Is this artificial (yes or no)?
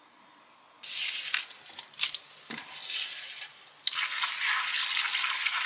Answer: no